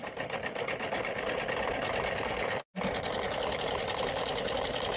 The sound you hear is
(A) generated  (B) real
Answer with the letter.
B